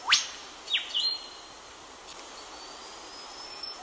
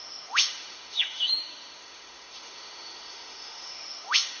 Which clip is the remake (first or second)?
second